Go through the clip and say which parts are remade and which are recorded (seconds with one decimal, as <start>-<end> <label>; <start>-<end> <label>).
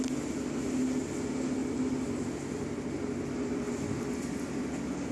0.0-5.1 recorded